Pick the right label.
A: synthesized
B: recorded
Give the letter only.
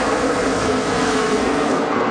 A